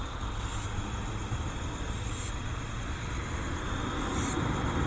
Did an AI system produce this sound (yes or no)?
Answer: no